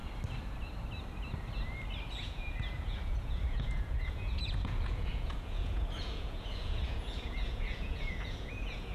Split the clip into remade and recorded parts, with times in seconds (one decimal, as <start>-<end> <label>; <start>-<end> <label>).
0.0-2.1 recorded; 2.1-8.9 remade